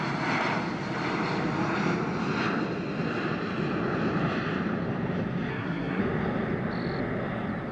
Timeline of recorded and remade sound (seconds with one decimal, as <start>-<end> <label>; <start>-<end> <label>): 0.0-5.5 recorded; 5.5-6.0 remade; 6.0-7.7 recorded